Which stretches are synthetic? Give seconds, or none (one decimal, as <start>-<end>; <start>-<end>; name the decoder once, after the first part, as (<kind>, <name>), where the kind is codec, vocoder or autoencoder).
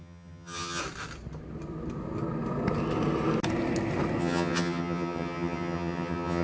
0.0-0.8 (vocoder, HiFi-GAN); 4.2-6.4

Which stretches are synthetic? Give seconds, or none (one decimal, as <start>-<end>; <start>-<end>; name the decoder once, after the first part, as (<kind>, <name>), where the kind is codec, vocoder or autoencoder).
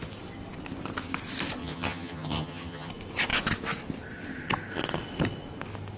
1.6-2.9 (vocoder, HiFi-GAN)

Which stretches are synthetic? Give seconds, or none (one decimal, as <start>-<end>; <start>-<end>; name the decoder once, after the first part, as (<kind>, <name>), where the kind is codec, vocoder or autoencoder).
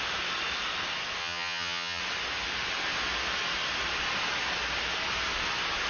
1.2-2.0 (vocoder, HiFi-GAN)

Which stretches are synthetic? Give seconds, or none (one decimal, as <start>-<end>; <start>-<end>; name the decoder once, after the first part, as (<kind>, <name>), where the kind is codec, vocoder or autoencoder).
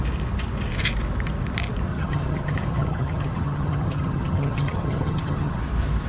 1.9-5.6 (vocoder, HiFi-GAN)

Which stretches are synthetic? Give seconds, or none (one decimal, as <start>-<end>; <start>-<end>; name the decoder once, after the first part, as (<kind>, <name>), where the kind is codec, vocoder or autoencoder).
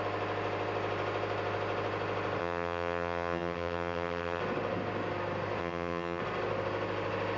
2.4-4.4 (vocoder, HiFi-GAN); 5.6-6.2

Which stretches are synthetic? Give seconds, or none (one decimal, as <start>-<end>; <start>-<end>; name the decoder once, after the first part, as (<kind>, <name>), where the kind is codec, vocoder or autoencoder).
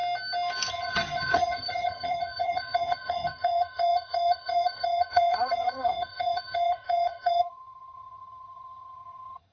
0.7-9.5 (vocoder, HiFi-GAN)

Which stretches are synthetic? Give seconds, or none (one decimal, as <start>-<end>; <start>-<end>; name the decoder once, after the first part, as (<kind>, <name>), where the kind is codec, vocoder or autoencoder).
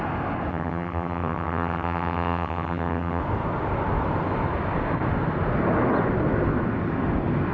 0.5-3.2 (vocoder, HiFi-GAN)